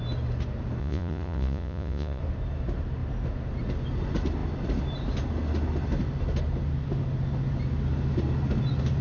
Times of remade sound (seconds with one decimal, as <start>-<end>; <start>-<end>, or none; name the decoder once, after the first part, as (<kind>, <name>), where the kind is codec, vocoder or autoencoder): 0.8-2.2 (vocoder, Vocos)